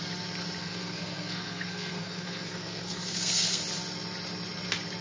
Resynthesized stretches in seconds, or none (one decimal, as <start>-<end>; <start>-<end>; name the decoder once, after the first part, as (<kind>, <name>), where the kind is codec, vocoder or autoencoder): 0.6-3.6 (codec, SNAC)